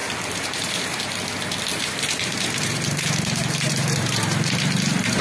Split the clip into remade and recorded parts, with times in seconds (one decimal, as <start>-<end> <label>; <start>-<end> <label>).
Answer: 0.0-1.0 remade; 1.0-1.7 recorded; 1.7-4.8 remade; 4.8-5.2 recorded